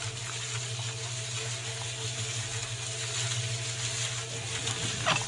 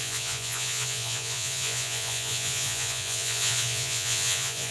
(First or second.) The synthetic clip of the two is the second